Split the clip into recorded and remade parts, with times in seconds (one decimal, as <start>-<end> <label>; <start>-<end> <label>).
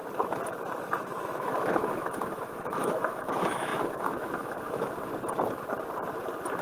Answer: 0.0-0.8 recorded; 0.8-5.1 remade; 5.1-6.6 recorded